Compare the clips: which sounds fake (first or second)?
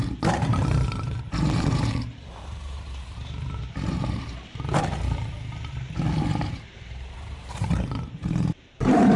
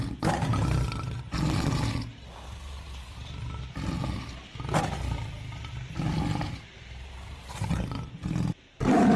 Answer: first